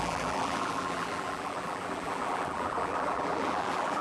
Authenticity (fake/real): fake